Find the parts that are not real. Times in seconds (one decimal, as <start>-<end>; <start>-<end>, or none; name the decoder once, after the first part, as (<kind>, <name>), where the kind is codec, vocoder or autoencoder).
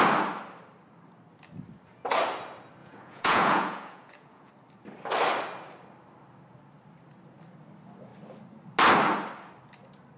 2.8-4.5 (vocoder, Vocos)